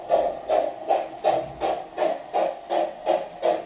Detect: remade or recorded recorded